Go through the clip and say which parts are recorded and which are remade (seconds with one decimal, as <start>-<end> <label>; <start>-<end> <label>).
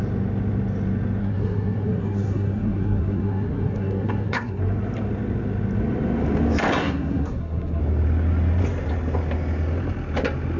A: 0.0-1.2 recorded; 1.2-4.6 remade; 4.6-6.8 recorded; 6.8-7.8 remade; 7.8-10.6 recorded